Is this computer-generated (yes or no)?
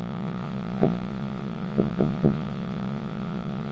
yes